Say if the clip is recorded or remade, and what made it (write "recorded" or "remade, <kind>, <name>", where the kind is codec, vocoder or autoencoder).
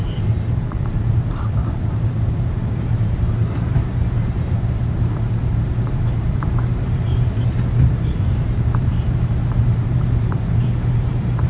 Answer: remade, vocoder, BigVGAN v2